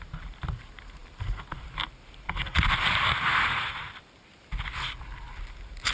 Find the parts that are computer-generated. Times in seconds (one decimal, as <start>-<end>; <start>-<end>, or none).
none